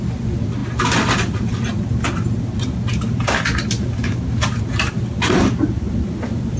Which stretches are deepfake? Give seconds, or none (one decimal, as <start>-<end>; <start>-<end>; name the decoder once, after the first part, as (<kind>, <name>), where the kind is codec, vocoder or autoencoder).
none